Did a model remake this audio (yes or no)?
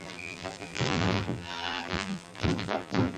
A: yes